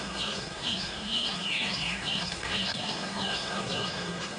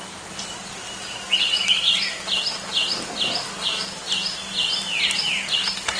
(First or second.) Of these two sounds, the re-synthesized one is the first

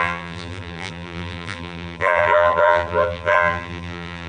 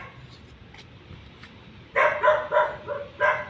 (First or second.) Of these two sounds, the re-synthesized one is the first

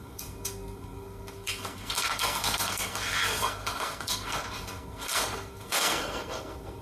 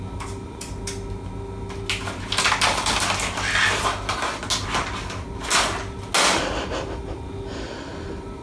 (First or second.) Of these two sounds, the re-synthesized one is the first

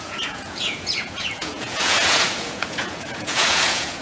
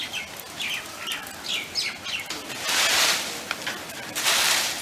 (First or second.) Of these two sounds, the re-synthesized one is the first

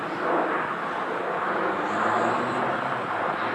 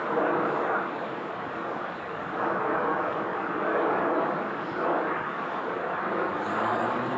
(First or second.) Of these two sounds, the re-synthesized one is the second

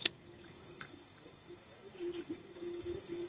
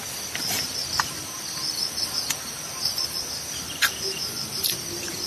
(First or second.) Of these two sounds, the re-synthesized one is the first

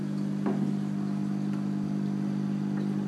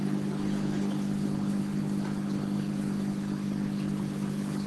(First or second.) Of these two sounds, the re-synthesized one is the second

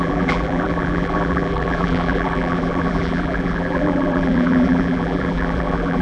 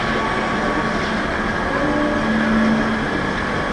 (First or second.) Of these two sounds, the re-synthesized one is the first